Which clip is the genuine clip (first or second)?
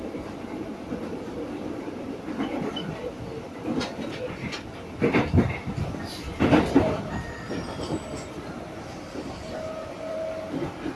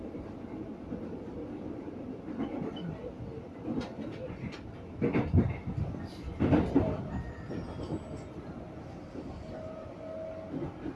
second